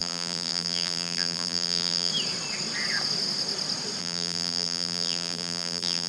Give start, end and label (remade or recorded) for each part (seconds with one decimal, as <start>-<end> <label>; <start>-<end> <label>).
0.0-2.1 remade; 2.1-4.0 recorded; 4.0-6.1 remade